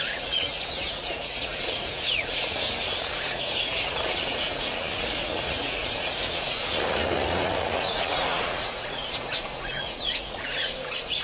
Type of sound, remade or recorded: remade